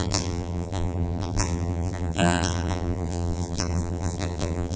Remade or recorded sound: remade